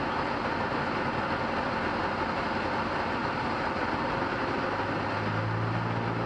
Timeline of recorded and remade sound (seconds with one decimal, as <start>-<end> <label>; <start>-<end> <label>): 0.0-6.3 recorded

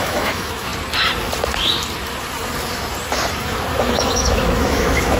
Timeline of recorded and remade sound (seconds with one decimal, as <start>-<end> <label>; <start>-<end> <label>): 0.0-0.7 remade; 0.7-3.8 recorded; 3.8-5.2 remade

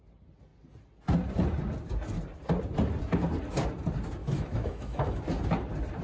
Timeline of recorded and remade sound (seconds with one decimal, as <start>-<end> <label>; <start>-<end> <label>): 0.0-4.2 recorded; 4.2-5.2 remade; 5.2-6.0 recorded

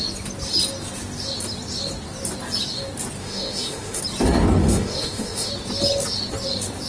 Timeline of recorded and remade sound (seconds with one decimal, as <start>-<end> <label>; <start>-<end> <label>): 0.0-3.2 recorded; 3.2-4.0 remade; 4.0-4.6 recorded; 4.6-5.5 remade; 5.5-6.9 recorded

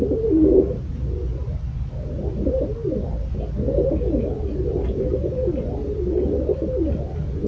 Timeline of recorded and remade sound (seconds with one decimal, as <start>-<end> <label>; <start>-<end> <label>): 0.0-7.5 recorded

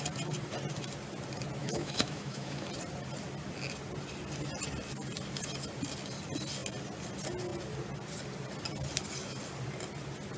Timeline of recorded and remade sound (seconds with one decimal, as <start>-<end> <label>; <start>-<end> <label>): 0.0-1.6 recorded; 1.6-2.7 remade; 2.7-10.4 recorded

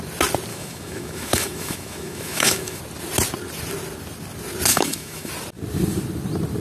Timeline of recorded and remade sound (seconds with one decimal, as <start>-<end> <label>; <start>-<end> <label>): 0.0-0.5 recorded; 0.5-2.8 remade; 2.8-4.7 recorded; 4.7-5.3 remade; 5.3-6.6 recorded